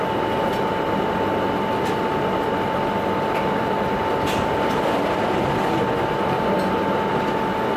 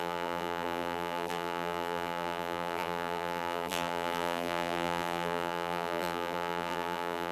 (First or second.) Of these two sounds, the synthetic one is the second